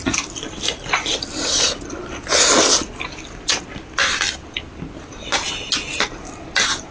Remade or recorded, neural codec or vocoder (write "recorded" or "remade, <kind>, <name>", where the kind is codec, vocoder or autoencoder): recorded